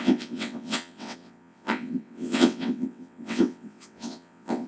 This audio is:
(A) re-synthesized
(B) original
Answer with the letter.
A